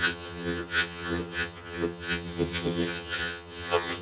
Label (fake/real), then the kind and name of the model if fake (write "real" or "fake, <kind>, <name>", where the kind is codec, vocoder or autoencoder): fake, vocoder, HiFi-GAN